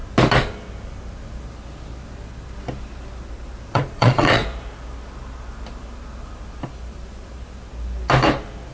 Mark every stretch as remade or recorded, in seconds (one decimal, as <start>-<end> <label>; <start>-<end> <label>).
0.0-3.7 recorded; 3.7-4.4 remade; 4.4-8.7 recorded